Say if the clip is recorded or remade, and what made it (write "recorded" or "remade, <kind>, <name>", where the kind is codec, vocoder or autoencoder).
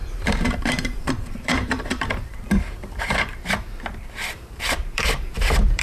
remade, vocoder, BigVGAN v2